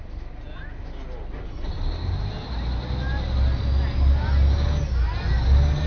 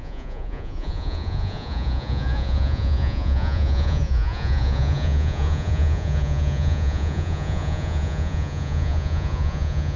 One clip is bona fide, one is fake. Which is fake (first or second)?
second